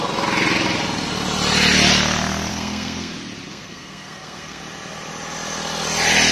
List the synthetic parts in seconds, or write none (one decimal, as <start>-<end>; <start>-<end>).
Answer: 2.5-3.1; 3.5-4.6